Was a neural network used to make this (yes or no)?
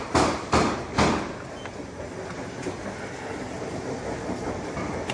no